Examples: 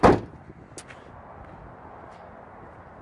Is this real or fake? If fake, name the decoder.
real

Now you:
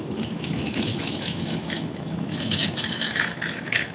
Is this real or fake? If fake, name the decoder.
fake, autoencoder, DAC-VAE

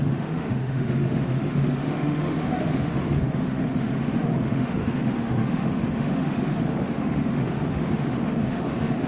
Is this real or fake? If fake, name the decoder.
fake, autoencoder, DAC-VAE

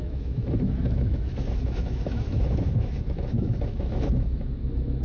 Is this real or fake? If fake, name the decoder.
fake, autoencoder, DAC-VAE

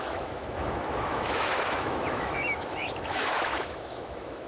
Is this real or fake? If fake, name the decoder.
fake, autoencoder, DAC-VAE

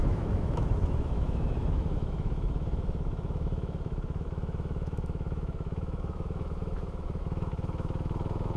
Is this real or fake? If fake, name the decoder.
fake, autoencoder, DAC-VAE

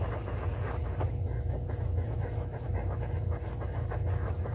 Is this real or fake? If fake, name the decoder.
fake, autoencoder, DAC-VAE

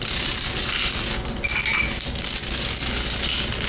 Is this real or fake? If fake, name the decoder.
real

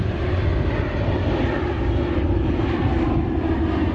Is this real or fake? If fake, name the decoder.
real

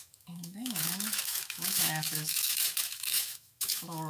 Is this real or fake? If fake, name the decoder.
fake, autoencoder, DAC-VAE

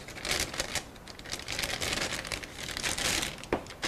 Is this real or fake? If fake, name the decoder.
real